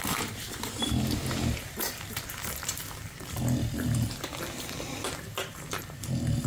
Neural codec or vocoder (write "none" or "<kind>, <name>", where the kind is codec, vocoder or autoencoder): none